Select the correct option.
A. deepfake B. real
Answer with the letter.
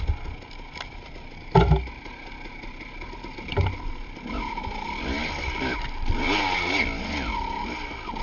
B